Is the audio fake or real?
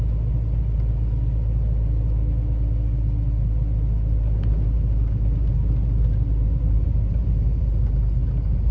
real